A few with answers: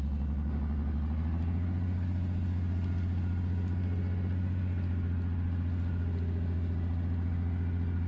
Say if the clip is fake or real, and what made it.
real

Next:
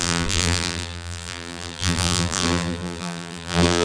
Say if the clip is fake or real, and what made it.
fake, vocoder, BigVGAN v2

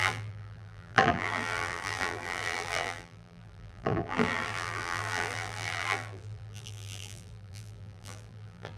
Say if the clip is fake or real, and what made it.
fake, vocoder, BigVGAN v2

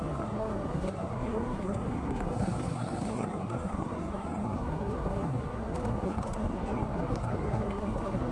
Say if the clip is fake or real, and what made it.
fake, codec, SNAC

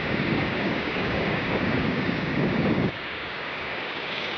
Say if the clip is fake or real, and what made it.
fake, codec, DAC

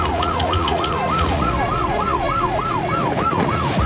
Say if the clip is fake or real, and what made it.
fake, vocoder, Vocos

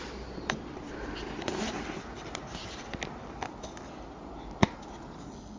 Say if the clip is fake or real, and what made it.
real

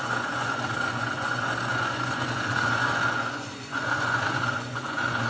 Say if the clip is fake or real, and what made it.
fake, vocoder, Vocos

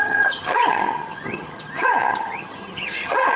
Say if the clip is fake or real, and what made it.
fake, vocoder, HiFi-GAN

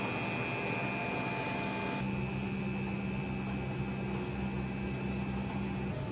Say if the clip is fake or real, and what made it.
real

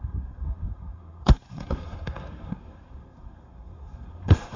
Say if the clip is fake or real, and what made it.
fake, codec, SNAC